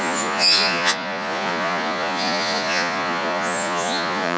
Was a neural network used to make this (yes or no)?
yes